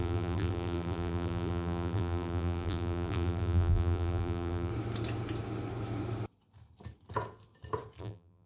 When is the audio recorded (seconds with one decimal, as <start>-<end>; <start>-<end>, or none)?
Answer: 4.7-8.0